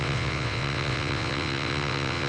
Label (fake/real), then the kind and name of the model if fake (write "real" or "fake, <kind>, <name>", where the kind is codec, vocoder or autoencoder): fake, vocoder, WaveNeXt